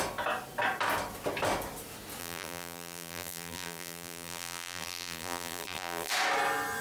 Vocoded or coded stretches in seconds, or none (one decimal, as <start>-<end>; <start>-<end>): 2.2-6.1